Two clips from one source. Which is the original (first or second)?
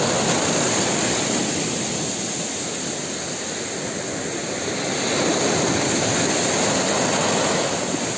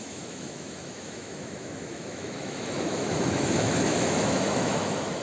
first